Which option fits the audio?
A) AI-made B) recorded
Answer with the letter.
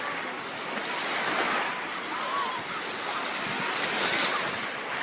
B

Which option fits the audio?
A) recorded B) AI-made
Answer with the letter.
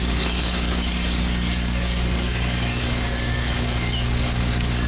B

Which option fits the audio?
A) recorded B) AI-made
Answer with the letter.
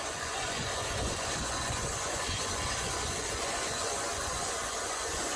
B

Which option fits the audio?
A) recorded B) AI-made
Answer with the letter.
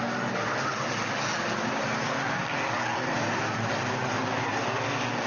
A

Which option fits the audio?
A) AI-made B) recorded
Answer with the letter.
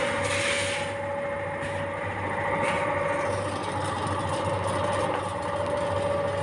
B